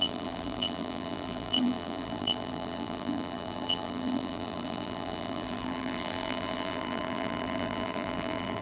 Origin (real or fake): fake